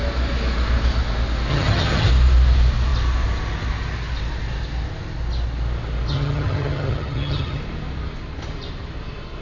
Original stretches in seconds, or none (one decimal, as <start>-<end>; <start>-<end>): 0.0-1.5; 2.1-6.1; 7.6-9.4